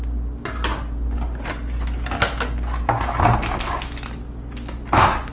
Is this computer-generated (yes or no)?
no